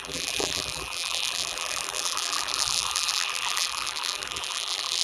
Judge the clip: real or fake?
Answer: fake